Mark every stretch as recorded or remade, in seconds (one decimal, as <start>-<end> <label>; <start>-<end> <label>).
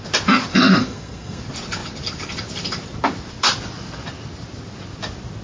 0.0-0.5 recorded; 0.5-1.4 remade; 1.4-5.4 recorded